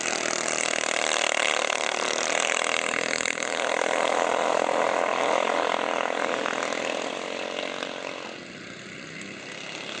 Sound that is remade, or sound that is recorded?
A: recorded